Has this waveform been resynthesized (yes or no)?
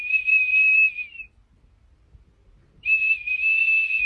no